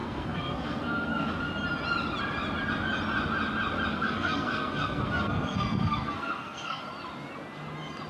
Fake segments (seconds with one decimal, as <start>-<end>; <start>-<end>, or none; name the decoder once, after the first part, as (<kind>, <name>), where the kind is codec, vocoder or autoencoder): 0.0-1.3 (codec, SNAC); 3.9-6.8